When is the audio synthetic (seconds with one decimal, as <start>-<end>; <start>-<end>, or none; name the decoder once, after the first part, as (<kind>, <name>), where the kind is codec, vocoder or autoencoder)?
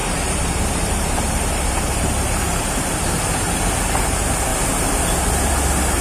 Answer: 0.0-1.8 (vocoder, BigVGAN v2)